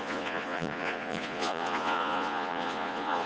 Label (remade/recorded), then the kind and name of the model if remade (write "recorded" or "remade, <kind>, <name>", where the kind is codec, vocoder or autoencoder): remade, vocoder, Vocos